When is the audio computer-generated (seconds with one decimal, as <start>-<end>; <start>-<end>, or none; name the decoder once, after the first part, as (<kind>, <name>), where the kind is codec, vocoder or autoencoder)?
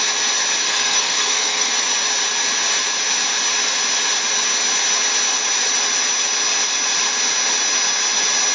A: 0.6-1.7 (codec, SNAC)